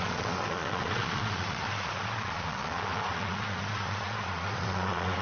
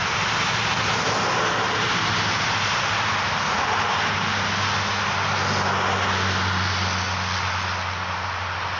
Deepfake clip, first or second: first